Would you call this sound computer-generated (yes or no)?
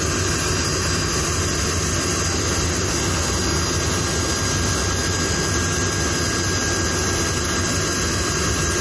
no